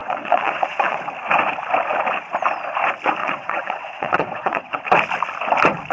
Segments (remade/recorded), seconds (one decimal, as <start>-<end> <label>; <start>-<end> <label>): 0.0-1.0 remade; 1.0-3.2 recorded; 3.2-4.8 remade; 4.8-5.9 recorded